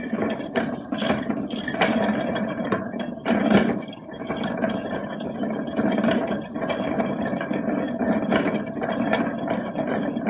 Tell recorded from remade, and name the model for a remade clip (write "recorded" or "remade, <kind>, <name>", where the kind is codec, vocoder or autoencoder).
remade, vocoder, BigVGAN v2